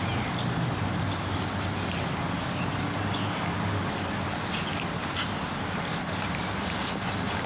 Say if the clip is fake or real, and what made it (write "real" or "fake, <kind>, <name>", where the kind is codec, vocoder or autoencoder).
real